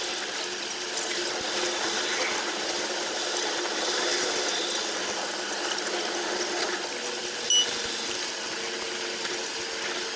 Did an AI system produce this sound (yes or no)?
no